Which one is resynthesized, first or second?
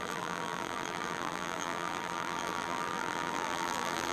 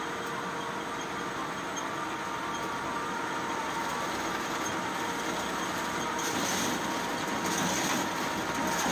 first